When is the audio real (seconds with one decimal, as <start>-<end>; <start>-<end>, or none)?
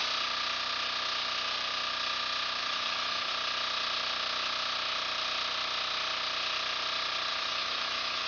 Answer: 0.0-2.6; 3.3-7.3